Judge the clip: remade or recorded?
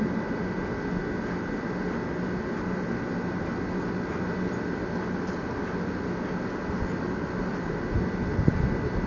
recorded